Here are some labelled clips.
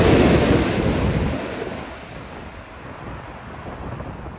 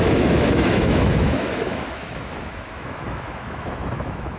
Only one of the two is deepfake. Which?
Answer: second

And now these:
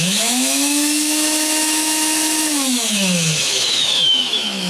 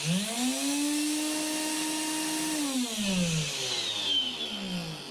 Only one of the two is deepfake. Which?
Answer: first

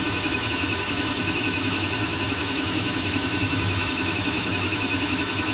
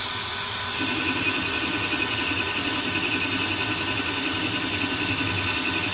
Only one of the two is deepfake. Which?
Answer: first